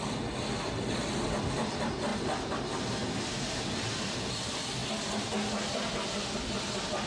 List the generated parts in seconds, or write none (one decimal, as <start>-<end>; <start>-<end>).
none